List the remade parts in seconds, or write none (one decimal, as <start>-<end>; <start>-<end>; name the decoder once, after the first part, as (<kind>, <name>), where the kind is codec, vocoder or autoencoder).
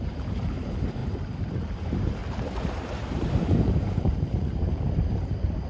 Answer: 0.0-2.2 (vocoder, BigVGAN v2); 2.7-5.7